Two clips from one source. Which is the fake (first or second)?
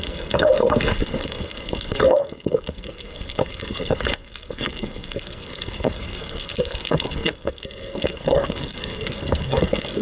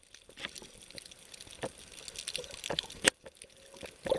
first